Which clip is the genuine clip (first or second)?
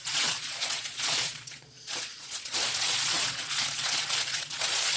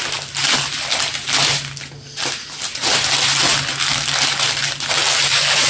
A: second